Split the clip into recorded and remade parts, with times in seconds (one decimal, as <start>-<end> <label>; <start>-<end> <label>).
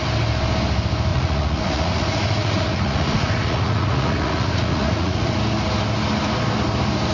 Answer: 0.0-1.1 recorded; 1.1-5.4 remade; 5.4-7.1 recorded